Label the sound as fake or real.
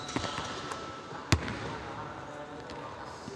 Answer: real